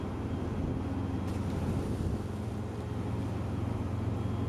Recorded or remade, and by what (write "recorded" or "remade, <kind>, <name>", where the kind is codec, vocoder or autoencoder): recorded